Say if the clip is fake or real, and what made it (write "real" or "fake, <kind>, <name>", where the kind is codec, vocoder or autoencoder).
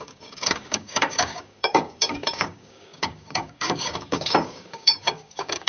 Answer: fake, codec, DAC